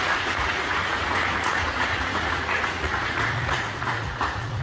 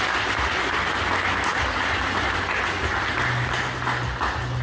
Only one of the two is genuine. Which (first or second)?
second